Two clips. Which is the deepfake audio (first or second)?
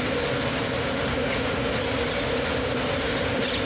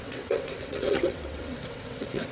second